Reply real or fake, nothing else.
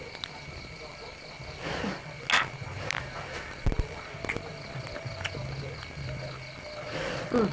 real